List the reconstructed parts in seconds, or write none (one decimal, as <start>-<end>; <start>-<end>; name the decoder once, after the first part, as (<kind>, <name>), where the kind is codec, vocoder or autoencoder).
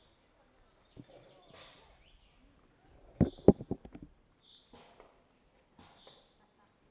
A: none